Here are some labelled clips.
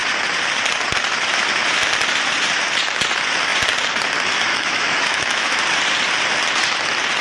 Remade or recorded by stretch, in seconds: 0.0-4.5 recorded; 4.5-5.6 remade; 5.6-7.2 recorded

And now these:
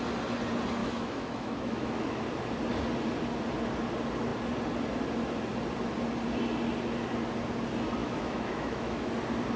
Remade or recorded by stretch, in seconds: 0.0-0.8 recorded; 0.8-2.2 remade; 2.2-8.0 recorded; 8.0-9.1 remade; 9.1-9.6 recorded

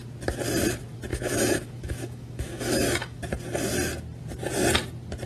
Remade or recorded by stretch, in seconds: 0.0-1.1 recorded; 1.1-3.2 remade; 3.2-5.3 recorded

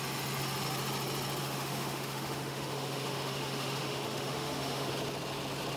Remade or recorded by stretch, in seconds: 0.0-1.4 recorded; 1.4-4.9 remade; 4.9-5.8 recorded

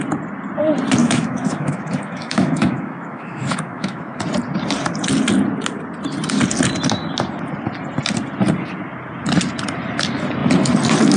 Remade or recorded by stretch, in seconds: 0.0-1.0 recorded; 1.0-4.2 remade; 4.2-11.2 recorded

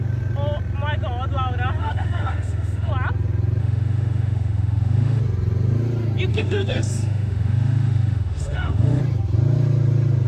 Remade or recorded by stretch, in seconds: 0.0-1.8 recorded; 1.8-2.9 remade; 2.9-3.6 recorded; 3.6-5.2 remade; 5.2-6.3 recorded; 6.3-9.0 remade; 9.0-10.3 recorded

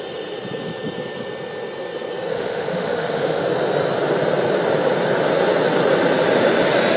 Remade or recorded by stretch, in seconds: 0.0-2.3 recorded; 2.3-3.4 remade; 3.4-7.0 recorded